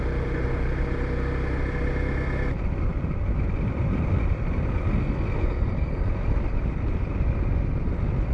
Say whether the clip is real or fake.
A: real